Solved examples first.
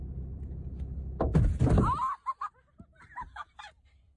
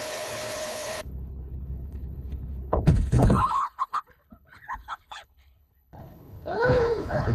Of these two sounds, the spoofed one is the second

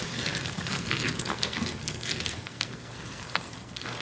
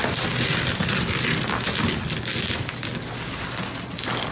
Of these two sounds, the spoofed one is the first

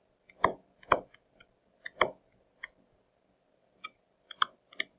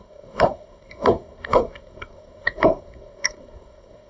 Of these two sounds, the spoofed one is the second